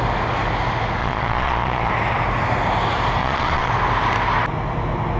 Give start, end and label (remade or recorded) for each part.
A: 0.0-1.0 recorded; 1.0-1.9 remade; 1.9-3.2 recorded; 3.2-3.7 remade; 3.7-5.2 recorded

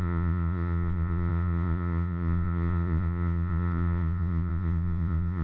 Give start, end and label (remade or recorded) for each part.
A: 0.0-5.4 remade

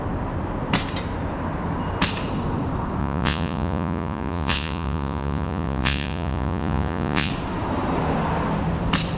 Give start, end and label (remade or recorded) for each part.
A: 0.0-3.0 recorded; 3.0-7.3 remade; 7.3-9.2 recorded

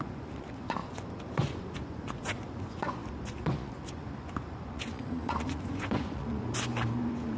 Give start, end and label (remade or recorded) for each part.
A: 0.0-7.4 remade

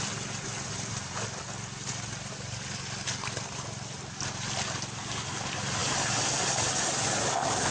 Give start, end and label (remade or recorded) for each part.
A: 0.0-7.7 recorded